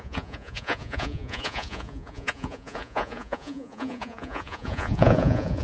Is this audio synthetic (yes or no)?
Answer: yes